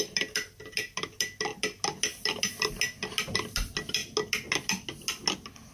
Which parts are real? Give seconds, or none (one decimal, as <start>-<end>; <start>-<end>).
0.0-5.7